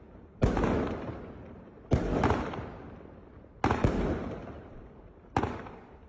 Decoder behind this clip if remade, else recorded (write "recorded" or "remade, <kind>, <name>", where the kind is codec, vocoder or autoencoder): recorded